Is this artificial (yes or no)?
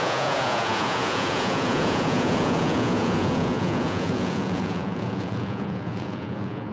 yes